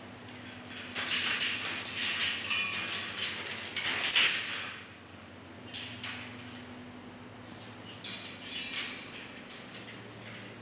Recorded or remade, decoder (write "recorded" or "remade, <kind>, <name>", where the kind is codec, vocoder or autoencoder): recorded